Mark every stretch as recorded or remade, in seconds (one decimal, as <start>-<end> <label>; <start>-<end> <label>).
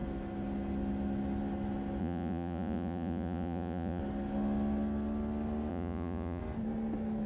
0.0-2.0 recorded; 2.0-4.0 remade; 4.0-5.7 recorded; 5.7-6.4 remade; 6.4-7.3 recorded